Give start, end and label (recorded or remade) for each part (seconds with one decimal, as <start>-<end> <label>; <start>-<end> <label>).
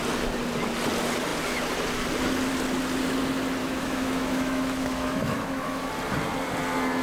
0.0-3.6 recorded; 3.6-5.9 remade; 5.9-7.0 recorded